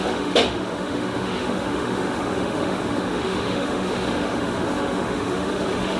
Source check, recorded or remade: remade